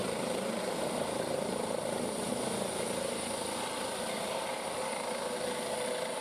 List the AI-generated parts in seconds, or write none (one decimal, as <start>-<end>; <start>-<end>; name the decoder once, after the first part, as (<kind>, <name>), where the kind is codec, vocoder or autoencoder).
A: 0.0-2.3 (vocoder, BigVGAN v2)